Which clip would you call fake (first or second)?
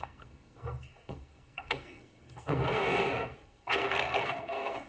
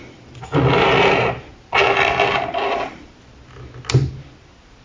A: first